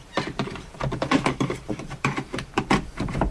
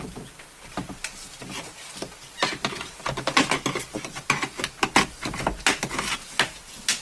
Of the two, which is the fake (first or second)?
first